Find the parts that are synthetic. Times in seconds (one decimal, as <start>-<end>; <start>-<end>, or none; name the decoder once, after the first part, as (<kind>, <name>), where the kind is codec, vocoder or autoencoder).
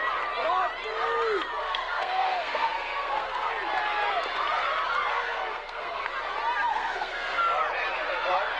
1.6-3.5 (codec, SNAC); 5.1-6.1; 6.7-7.4